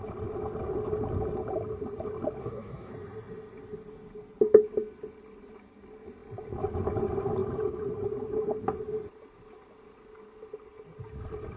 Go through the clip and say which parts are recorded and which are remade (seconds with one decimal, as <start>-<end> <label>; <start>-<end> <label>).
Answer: 0.0-2.4 recorded; 2.4-2.9 remade; 2.9-11.6 recorded